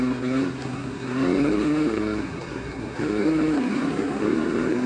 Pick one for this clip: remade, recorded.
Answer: remade